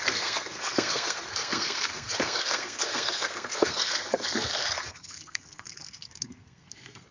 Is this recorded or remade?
remade